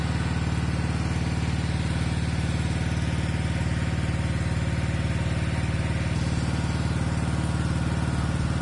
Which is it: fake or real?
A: real